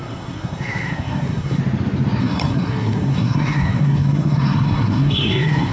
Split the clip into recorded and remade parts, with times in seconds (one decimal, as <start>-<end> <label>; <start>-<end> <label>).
0.0-1.6 remade; 1.6-2.2 recorded; 2.2-5.7 remade